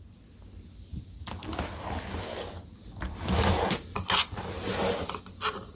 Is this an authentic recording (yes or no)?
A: yes